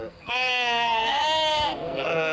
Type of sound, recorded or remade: remade